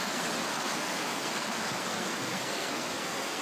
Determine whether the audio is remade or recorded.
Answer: remade